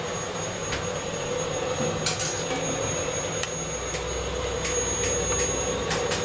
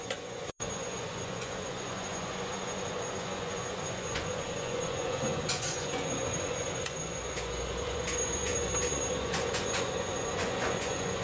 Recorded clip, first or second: first